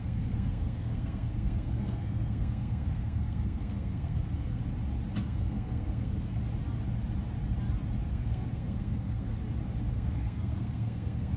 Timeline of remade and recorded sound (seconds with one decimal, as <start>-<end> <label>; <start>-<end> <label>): 0.0-4.6 remade; 4.6-5.2 recorded; 5.2-6.4 remade; 6.4-8.1 recorded; 8.1-9.3 remade; 9.3-9.9 recorded; 9.9-11.4 remade